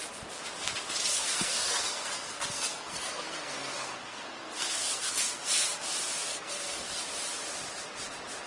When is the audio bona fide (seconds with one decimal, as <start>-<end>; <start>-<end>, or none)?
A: 0.0-1.1; 5.8-6.3; 7.0-8.5